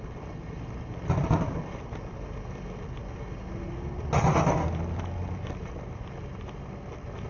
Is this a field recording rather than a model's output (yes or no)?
yes